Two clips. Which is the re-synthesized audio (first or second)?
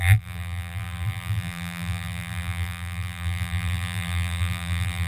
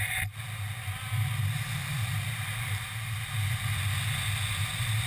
first